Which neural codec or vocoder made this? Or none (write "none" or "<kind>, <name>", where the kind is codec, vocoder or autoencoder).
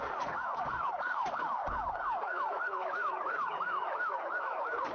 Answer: codec, DAC